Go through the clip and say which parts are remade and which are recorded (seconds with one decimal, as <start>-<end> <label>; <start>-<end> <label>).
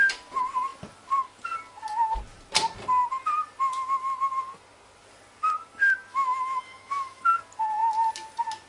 0.0-6.1 recorded; 6.1-7.2 remade; 7.2-8.7 recorded